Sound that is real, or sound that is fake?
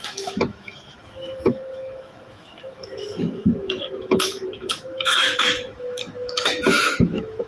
fake